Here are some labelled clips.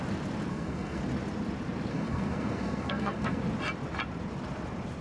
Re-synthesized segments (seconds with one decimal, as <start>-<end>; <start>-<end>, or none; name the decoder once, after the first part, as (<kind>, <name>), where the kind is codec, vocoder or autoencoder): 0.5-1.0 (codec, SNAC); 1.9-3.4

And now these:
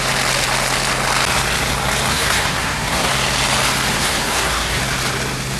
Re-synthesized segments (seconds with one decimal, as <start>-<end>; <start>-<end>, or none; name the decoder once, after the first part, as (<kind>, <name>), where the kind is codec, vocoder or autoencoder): 2.1-3.1 (codec, SNAC); 3.9-4.8

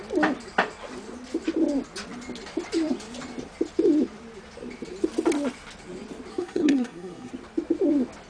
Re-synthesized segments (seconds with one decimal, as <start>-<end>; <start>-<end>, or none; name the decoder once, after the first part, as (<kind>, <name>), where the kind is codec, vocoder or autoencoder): 6.3-7.3 (codec, SNAC)